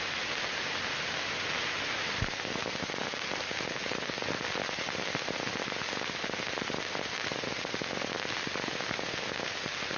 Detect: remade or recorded recorded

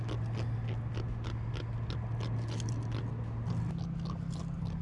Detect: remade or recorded recorded